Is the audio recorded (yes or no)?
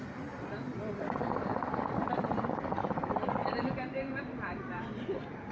yes